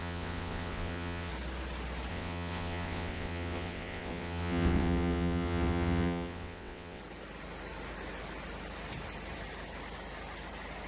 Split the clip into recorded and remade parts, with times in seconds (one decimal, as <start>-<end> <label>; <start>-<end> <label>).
0.0-1.3 remade; 1.3-2.1 recorded; 2.1-7.0 remade; 7.0-10.9 recorded